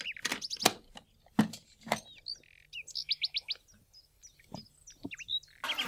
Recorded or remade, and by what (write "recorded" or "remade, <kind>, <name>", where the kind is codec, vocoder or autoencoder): recorded